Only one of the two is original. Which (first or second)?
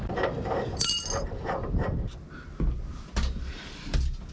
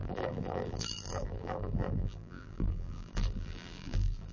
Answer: first